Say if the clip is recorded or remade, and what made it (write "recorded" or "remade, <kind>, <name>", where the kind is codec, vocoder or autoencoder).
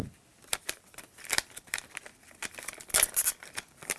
remade, vocoder, BigVGAN v2